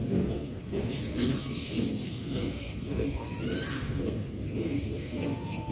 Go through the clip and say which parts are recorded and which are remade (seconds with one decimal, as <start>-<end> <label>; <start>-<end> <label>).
0.0-3.3 remade; 3.3-3.7 recorded; 3.7-5.7 remade